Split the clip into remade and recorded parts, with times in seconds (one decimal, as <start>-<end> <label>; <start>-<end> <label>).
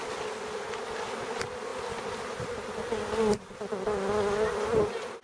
0.0-5.2 recorded